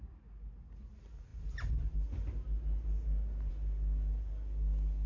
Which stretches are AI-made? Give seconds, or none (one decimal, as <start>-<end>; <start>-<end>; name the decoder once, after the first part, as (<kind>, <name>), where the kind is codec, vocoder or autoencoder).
none